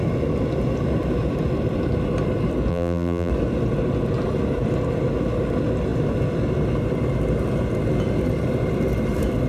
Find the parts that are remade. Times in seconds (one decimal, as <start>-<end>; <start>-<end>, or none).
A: 2.7-3.3